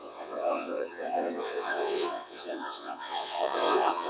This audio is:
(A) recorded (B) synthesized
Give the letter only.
B